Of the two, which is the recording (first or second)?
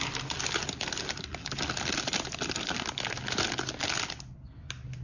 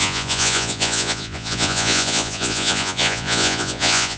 first